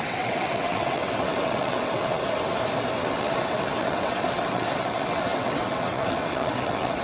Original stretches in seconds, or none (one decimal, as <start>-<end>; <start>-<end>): 2.2-3.0